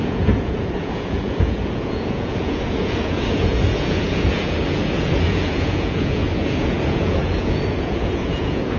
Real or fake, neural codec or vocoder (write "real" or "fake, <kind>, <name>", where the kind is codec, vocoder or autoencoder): fake, vocoder, Vocos